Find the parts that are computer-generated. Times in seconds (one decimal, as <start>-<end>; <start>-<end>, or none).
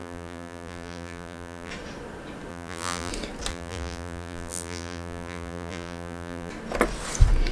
0.0-1.7; 2.5-3.1; 3.5-6.5